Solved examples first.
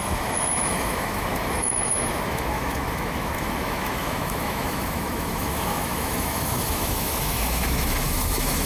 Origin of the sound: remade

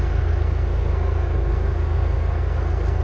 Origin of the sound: remade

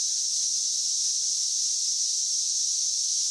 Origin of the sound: recorded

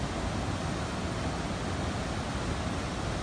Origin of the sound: recorded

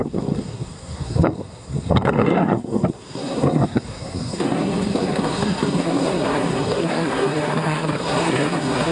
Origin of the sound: remade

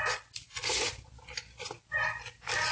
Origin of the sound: recorded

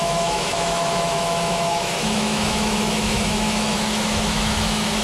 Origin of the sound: remade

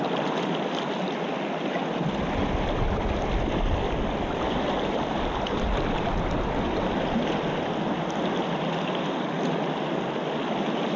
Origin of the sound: recorded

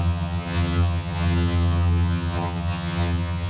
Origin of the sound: remade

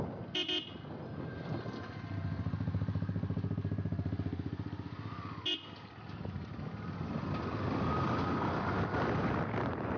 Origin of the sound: recorded